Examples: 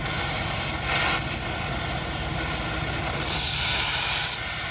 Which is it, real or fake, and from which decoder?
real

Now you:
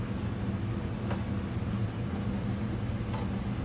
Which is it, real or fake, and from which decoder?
real